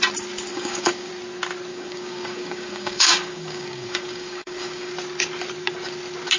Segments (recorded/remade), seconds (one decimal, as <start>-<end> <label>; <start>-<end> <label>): 0.0-0.5 recorded; 0.5-1.1 remade; 1.1-1.7 recorded; 1.7-4.9 remade; 4.9-6.4 recorded